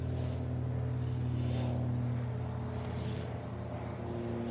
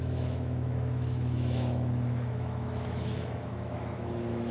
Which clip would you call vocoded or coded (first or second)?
second